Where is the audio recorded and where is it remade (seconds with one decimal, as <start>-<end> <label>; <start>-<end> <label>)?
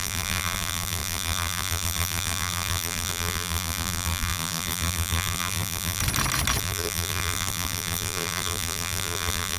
0.0-6.0 remade; 6.0-6.6 recorded; 6.6-9.6 remade